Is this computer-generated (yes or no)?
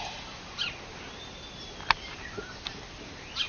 no